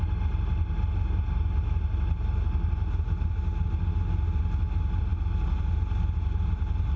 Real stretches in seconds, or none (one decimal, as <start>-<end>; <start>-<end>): 0.0-7.0